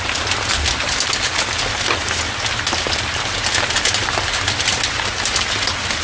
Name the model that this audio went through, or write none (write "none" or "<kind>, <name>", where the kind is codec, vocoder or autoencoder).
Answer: none